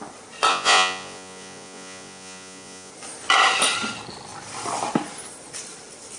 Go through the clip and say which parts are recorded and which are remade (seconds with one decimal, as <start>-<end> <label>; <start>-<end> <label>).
0.0-0.5 recorded; 0.5-2.9 remade; 2.9-6.2 recorded

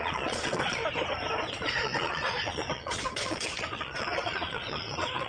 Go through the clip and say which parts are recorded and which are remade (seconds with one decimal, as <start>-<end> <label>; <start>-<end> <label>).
0.0-0.8 remade; 0.8-1.5 recorded; 1.5-5.3 remade

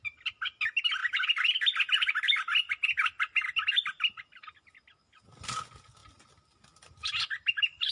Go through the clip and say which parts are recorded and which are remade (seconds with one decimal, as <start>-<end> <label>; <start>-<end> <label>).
0.0-7.9 recorded